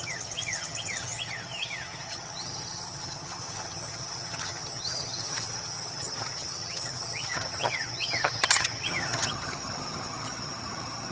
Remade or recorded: remade